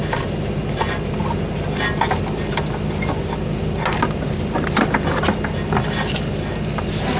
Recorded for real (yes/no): yes